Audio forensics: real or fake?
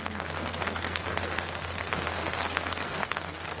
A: fake